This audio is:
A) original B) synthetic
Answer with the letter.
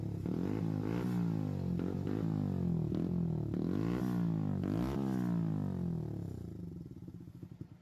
A